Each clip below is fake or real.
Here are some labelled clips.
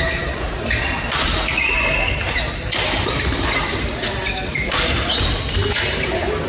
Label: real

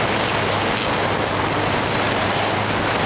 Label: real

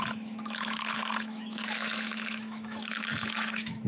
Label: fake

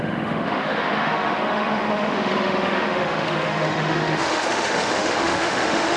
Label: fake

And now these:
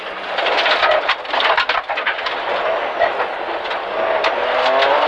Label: real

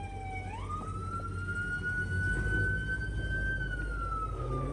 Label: real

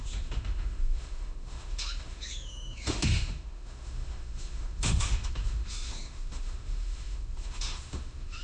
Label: fake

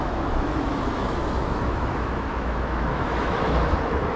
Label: fake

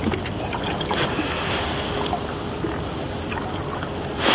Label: real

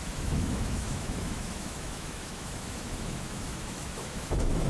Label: fake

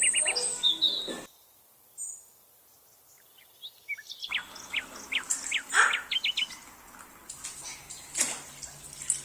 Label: real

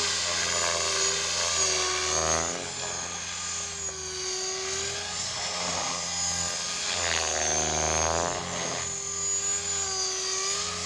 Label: real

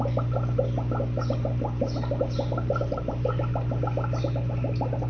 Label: real